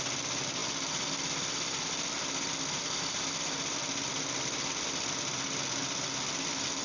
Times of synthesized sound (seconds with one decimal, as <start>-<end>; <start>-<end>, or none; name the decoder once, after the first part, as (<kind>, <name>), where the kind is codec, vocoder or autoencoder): none